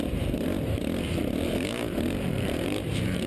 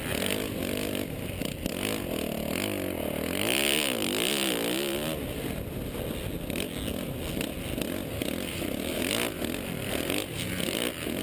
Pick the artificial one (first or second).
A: first